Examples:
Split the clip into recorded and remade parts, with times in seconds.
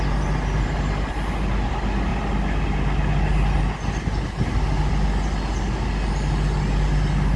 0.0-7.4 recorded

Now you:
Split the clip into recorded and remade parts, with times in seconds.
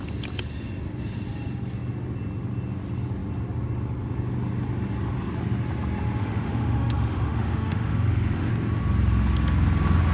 0.0-6.2 recorded; 6.2-8.5 remade; 8.5-10.1 recorded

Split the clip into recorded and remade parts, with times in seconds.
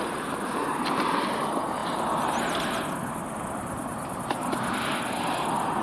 0.0-5.8 recorded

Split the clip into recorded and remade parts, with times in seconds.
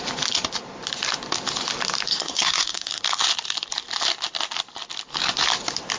0.0-2.1 recorded; 2.1-3.0 remade; 3.0-6.0 recorded